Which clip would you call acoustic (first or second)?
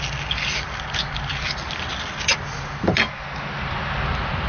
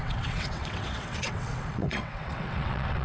first